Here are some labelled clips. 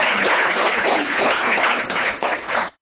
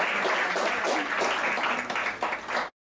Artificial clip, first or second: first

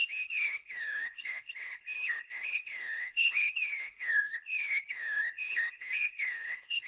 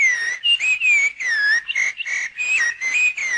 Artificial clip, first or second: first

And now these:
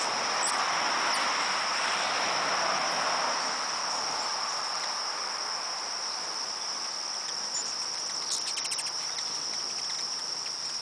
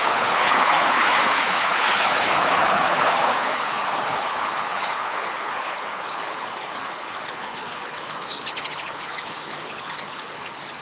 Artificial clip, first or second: second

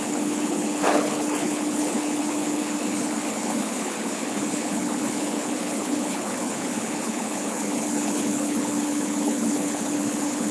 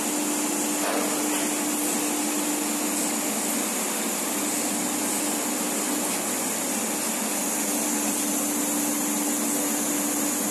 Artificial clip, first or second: first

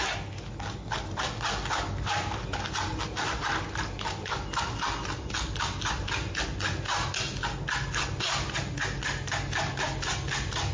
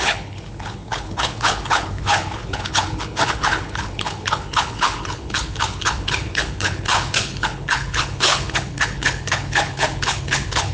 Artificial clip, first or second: second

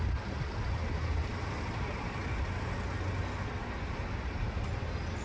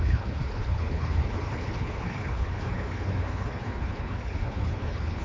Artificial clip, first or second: second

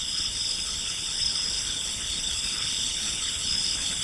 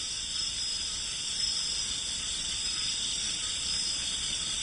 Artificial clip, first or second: first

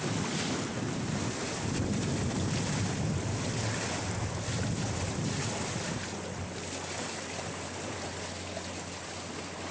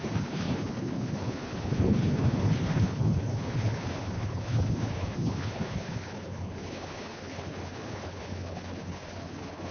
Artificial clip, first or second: second